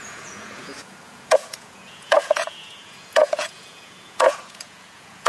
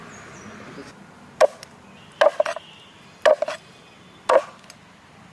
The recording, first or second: second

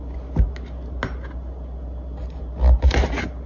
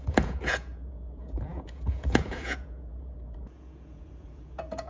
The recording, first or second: first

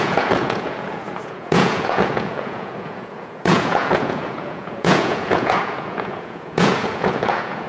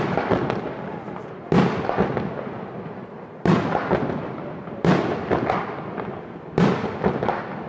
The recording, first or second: second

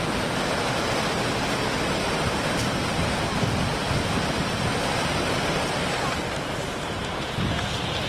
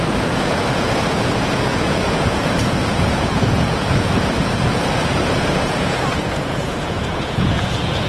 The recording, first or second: first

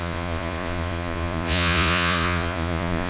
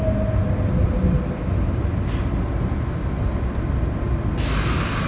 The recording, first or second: second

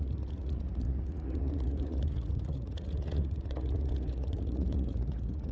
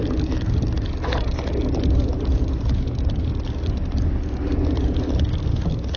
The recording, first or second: second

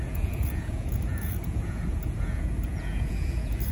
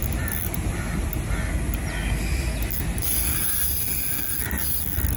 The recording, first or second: second